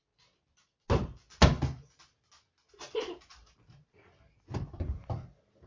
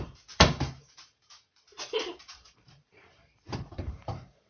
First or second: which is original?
first